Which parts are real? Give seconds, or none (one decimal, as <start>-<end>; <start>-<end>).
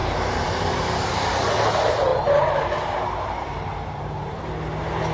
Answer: 1.2-2.1; 4.4-5.1